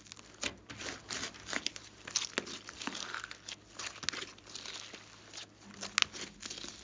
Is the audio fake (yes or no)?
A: no